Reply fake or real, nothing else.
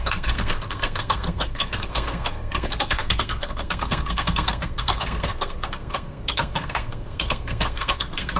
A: fake